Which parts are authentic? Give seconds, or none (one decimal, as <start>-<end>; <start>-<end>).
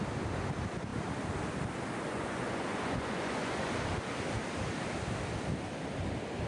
0.0-2.1; 3.7-6.5